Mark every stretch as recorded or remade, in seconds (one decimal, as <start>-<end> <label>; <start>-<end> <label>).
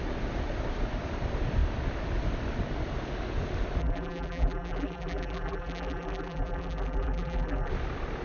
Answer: 0.0-3.8 recorded; 3.8-7.7 remade; 7.7-8.2 recorded